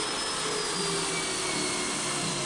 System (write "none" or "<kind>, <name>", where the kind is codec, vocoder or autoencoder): none